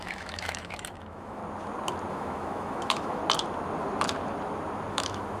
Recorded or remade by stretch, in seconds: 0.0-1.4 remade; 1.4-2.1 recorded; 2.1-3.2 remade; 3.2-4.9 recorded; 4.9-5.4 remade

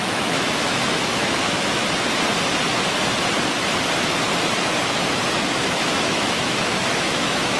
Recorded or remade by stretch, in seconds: 0.0-1.8 remade; 1.8-5.6 recorded; 5.6-7.6 remade

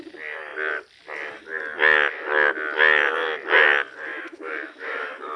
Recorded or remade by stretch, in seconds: 0.0-4.1 recorded; 4.1-5.4 remade

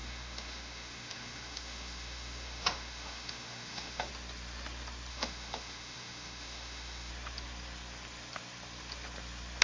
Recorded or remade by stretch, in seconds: 0.0-4.1 remade; 4.1-5.1 recorded; 5.1-7.1 remade; 7.1-9.6 recorded

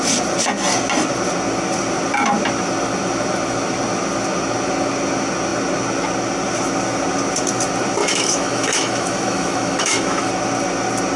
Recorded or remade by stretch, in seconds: 0.0-8.0 recorded; 8.0-10.3 remade; 10.3-11.2 recorded

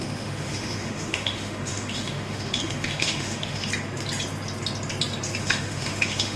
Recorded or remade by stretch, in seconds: 0.0-3.7 remade; 3.7-5.4 recorded; 5.4-6.4 remade